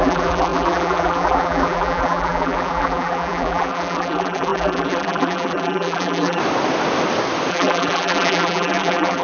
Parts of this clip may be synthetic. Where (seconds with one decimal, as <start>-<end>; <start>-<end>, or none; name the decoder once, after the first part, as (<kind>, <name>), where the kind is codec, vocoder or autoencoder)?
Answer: 0.0-6.4 (vocoder, BigVGAN v2); 7.5-9.2